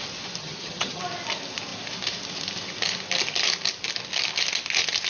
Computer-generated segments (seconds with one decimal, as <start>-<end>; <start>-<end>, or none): 0.4-1.0